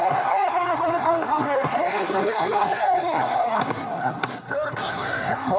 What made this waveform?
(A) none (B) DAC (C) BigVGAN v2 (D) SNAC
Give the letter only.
D